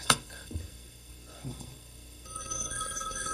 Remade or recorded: remade